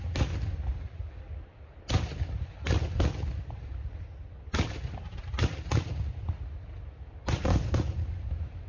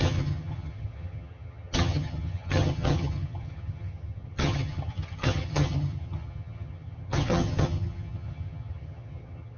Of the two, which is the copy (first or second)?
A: second